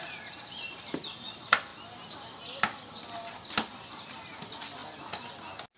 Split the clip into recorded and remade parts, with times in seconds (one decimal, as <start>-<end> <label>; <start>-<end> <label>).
0.0-5.8 recorded